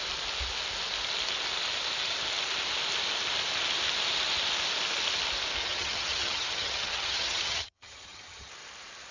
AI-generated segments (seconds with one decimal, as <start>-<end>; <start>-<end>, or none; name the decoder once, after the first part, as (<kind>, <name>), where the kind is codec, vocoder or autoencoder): 5.6-8.5 (vocoder, HiFi-GAN)